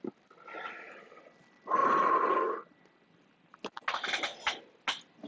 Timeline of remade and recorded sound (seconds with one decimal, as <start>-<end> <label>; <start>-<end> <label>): 0.0-5.3 recorded